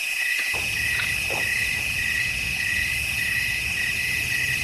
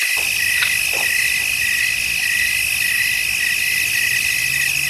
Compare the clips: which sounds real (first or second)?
second